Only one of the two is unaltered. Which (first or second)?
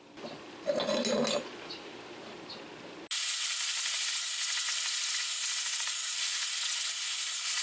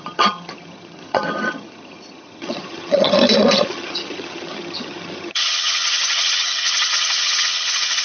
first